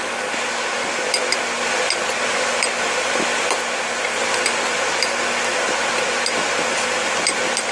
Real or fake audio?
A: real